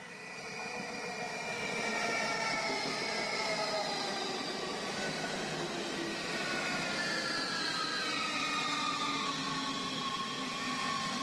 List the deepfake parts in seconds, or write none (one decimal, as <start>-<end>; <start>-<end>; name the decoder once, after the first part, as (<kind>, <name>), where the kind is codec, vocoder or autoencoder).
3.8-8.0 (vocoder, BigVGAN v2)